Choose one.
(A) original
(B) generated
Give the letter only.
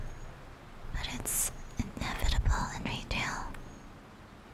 A